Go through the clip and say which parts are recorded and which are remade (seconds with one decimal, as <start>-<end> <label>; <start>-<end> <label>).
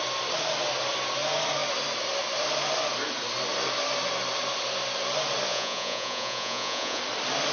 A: 0.0-5.5 recorded; 5.5-7.0 remade; 7.0-7.5 recorded